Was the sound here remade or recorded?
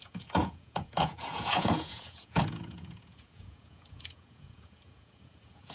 remade